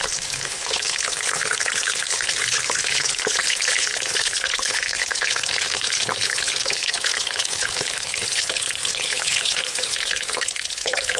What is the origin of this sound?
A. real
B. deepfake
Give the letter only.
B